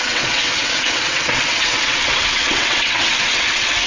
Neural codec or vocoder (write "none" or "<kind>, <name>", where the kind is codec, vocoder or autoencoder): vocoder, WaveNeXt